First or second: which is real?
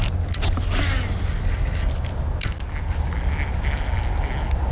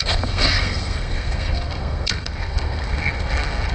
first